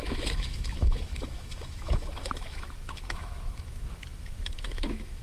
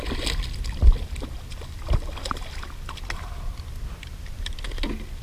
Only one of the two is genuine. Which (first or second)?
second